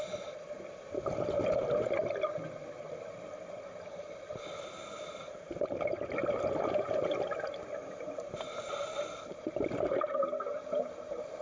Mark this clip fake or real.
real